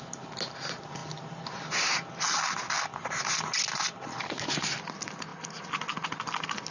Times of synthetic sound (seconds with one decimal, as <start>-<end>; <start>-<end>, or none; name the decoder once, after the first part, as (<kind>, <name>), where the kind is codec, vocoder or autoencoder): none